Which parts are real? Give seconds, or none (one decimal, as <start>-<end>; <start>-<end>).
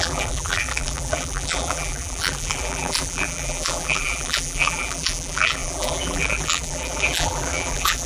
none